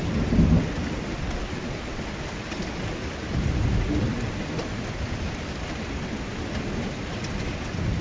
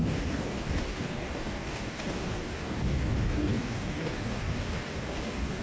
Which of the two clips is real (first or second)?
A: first